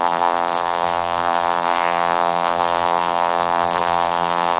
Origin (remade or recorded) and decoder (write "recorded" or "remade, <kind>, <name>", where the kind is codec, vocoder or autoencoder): remade, vocoder, BigVGAN v2